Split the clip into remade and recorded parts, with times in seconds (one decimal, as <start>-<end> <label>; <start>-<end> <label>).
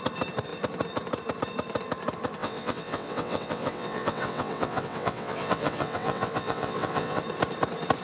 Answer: 0.0-2.4 recorded; 2.4-7.2 remade; 7.2-8.0 recorded